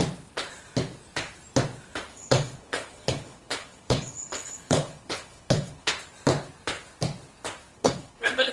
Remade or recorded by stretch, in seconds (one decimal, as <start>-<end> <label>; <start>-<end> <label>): 0.0-2.1 recorded; 2.1-5.9 remade; 5.9-7.7 recorded; 7.7-8.5 remade